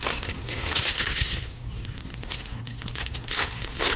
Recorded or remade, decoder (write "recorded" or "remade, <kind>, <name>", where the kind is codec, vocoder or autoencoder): remade, codec, SNAC